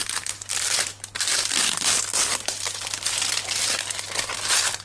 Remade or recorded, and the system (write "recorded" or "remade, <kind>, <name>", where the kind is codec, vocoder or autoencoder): recorded